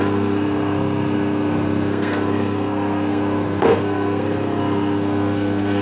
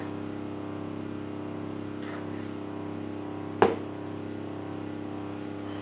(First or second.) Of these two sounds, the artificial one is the first